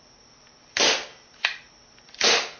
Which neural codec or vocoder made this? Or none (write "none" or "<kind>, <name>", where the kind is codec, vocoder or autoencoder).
none